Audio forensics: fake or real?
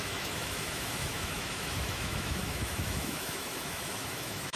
fake